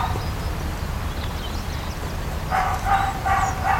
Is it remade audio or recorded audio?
recorded